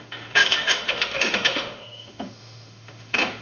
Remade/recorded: remade